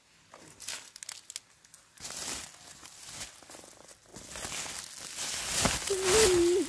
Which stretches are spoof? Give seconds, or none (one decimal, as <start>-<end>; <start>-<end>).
none